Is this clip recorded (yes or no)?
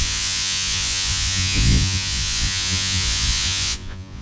no